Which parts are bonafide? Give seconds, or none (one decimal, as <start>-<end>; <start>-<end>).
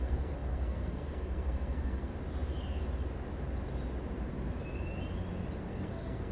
2.1-5.6